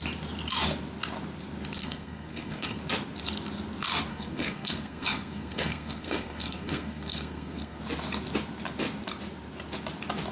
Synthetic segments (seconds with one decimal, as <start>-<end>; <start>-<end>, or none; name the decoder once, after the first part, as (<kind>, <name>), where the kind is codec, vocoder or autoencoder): 1.8-2.8 (codec, SNAC); 4.1-7.8